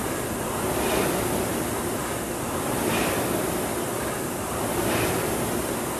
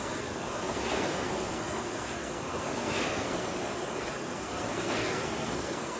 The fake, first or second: second